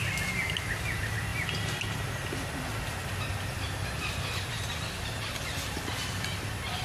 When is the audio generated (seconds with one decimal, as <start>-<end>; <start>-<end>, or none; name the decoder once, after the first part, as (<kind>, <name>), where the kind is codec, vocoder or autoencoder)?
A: 1.3-4.7 (vocoder, BigVGAN v2)

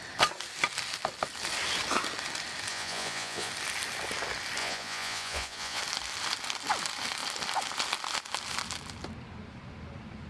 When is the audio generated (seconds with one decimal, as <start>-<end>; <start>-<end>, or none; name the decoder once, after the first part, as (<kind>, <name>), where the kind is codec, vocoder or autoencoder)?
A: 2.7-3.5 (vocoder, Vocos); 4.6-5.8

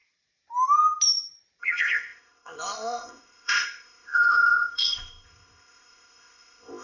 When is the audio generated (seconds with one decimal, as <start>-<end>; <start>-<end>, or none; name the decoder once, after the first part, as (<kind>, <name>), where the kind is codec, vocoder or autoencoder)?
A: 1.6-6.8 (codec, ZipCodec)

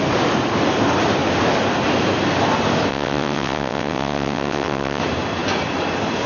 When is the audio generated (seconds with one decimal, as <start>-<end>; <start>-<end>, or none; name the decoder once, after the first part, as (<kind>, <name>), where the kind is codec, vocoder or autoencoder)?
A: 2.9-5.0 (vocoder, WaveNeXt)

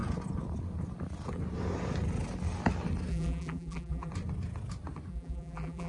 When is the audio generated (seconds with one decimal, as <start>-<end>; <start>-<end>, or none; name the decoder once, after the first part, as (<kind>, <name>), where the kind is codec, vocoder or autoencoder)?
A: 3.1-4.1 (vocoder, BigVGAN v2); 5.1-5.9

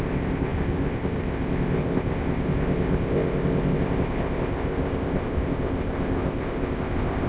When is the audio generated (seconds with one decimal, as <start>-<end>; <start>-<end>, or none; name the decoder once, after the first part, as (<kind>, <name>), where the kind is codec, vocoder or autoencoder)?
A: 0.0-7.3 (codec, ZipCodec)